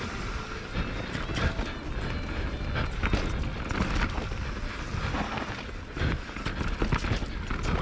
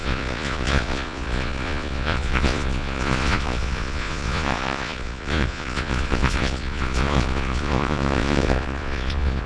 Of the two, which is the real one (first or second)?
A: first